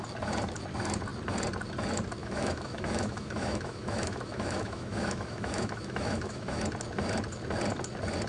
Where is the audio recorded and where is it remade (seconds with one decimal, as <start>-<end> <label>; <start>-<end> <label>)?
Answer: 0.0-2.2 recorded; 2.2-6.6 remade; 6.6-8.3 recorded